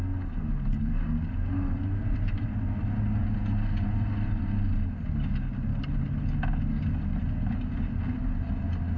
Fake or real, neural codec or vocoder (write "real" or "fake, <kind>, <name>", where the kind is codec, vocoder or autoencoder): real